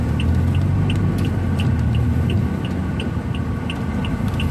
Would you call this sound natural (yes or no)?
yes